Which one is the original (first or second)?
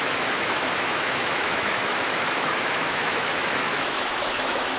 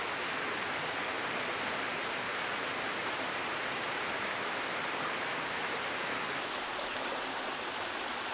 second